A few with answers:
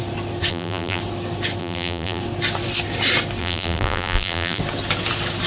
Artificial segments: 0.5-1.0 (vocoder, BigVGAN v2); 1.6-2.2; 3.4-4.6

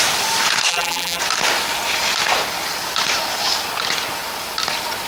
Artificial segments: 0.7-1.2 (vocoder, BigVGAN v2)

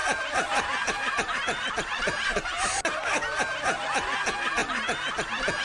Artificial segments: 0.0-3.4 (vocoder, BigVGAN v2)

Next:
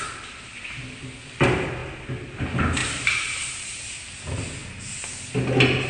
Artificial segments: 2.8-3.8 (vocoder, BigVGAN v2)

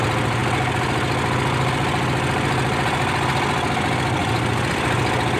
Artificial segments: 4.2-4.7 (vocoder, BigVGAN v2)

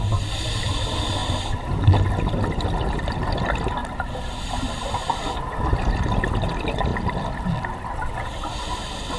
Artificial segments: 1.2-3.0 (vocoder, BigVGAN v2); 3.8-5.8; 6.9-8.5

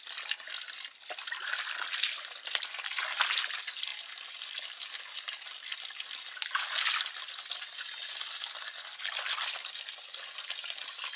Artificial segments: 8.0-8.8 (vocoder, BigVGAN v2)

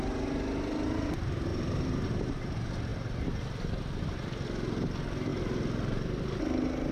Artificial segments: 1.5-2.4 (vocoder, BigVGAN v2)